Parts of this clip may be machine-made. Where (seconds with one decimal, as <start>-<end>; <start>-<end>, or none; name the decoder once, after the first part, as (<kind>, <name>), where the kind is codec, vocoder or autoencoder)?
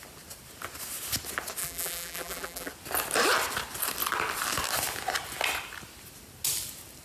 1.6-2.7 (vocoder, BigVGAN v2)